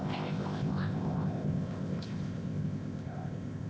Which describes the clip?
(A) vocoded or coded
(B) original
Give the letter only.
A